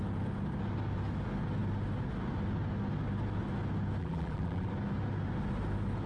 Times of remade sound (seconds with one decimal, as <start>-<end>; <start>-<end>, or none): 4.0-4.7

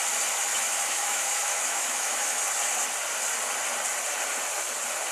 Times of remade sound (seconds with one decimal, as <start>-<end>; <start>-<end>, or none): 0.5-2.4